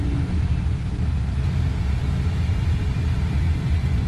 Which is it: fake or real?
real